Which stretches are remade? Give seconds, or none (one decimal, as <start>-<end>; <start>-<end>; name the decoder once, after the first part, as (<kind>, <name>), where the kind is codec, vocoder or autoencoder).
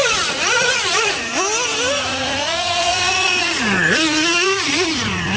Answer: 0.0-1.3 (vocoder, Vocos); 2.1-5.4